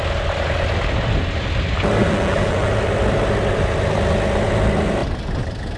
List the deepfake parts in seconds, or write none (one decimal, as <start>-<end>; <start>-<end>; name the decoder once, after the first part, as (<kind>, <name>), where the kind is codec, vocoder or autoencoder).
2.0-2.7 (vocoder, BigVGAN v2)